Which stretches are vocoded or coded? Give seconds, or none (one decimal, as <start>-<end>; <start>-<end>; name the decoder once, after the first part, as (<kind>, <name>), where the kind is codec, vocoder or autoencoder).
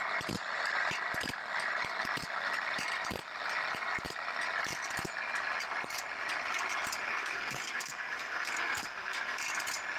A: 7.1-9.4 (codec, SNAC)